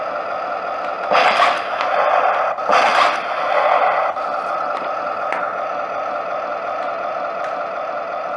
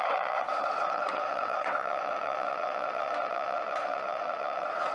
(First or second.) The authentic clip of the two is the first